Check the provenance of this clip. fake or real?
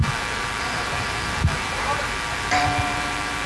fake